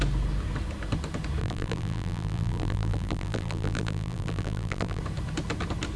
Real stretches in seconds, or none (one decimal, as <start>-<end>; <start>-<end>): 0.0-1.4; 5.0-6.0